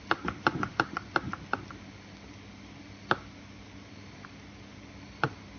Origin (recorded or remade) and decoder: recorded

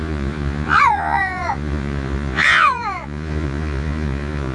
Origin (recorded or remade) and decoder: remade, vocoder, Vocos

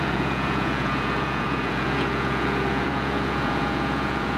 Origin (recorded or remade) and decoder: remade, vocoder, Vocos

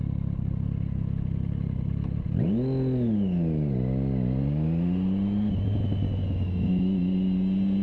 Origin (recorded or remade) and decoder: recorded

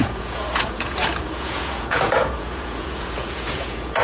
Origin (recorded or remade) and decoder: remade, vocoder, Vocos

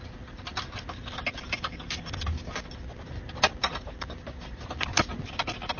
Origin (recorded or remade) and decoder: recorded